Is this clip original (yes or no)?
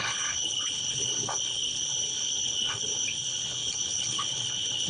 no